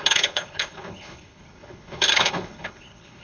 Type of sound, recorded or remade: remade